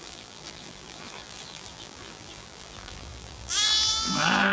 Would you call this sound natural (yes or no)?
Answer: no